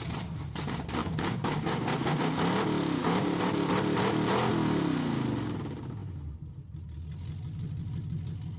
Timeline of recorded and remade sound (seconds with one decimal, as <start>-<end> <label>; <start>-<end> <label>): 0.0-1.0 recorded; 1.0-2.3 remade; 2.3-3.0 recorded; 3.0-3.5 remade; 3.5-8.6 recorded